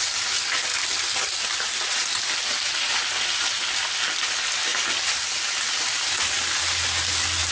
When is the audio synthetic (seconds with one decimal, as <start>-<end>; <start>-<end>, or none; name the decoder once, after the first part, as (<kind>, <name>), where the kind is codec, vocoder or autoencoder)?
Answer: none

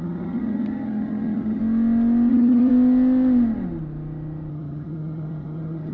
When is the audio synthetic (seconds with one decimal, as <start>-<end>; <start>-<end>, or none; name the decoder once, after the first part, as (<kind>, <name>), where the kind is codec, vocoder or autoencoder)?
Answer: 0.0-1.6 (vocoder, HiFi-GAN); 2.3-2.7; 4.5-5.9